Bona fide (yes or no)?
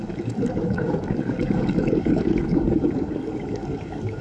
no